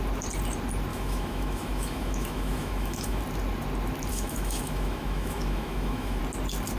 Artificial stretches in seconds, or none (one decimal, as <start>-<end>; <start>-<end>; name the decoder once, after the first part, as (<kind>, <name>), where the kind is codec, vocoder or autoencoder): 0.9-3.2 (autoencoder, DAC-VAE); 4.1-6.2